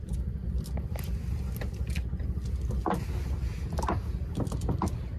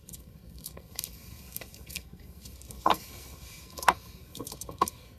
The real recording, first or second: first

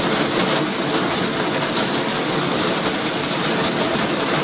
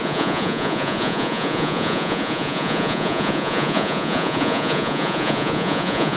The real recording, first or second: first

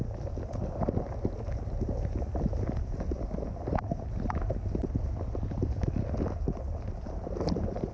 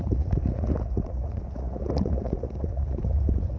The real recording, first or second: first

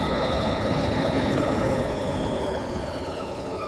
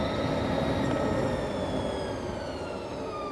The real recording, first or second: second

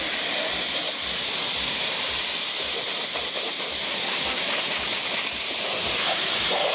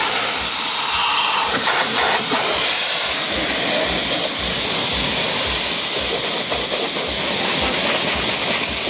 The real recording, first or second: second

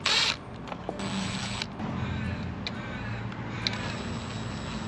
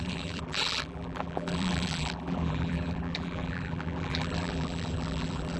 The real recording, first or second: first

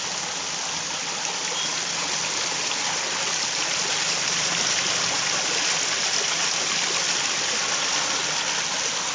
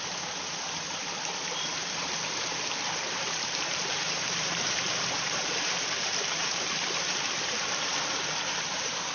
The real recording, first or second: first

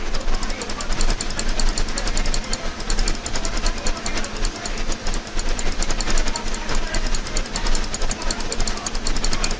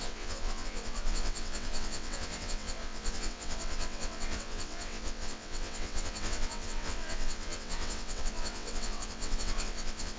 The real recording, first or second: first